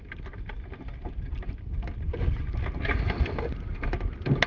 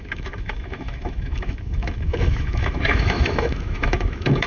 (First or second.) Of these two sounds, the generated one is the second